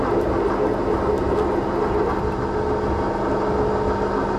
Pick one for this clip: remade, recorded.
recorded